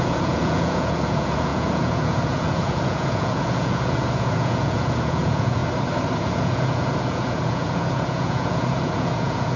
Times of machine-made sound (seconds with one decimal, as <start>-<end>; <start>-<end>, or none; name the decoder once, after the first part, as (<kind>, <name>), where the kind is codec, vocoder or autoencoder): 0.0-5.6 (vocoder, Vocos); 6.2-9.6